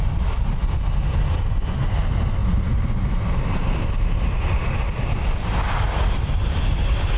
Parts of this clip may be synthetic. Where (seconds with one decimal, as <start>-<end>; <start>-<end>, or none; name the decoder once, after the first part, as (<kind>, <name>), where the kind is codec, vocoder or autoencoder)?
none